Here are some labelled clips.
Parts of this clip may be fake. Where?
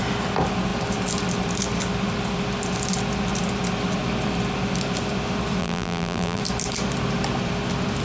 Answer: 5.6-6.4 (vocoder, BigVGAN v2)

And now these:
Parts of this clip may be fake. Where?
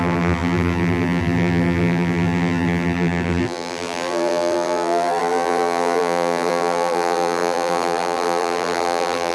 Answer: 0.0-9.3 (vocoder, BigVGAN v2)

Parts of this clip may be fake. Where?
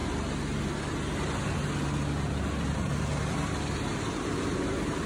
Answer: none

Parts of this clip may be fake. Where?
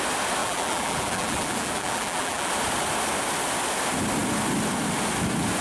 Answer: 0.4-2.5 (vocoder, BigVGAN v2)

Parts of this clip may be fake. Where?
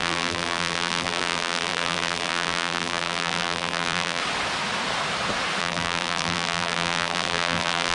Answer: 0.0-4.2 (vocoder, BigVGAN v2); 5.6-7.9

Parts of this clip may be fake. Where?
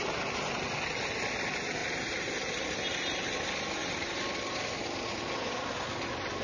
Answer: 1.8-2.8 (vocoder, BigVGAN v2)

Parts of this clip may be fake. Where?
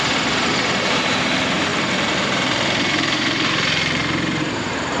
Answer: 1.7-5.0 (vocoder, BigVGAN v2)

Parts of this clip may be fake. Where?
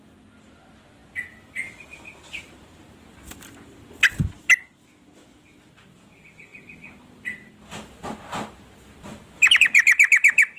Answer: 9.1-10.6 (vocoder, BigVGAN v2)